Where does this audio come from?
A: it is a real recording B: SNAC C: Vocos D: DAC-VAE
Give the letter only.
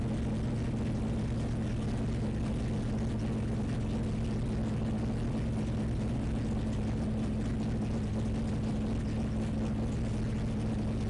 A